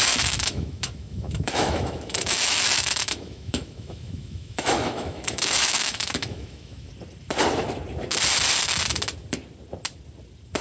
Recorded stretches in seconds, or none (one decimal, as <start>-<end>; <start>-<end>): 6.9-10.6